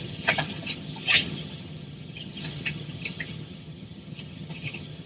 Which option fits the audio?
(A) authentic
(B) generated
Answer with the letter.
B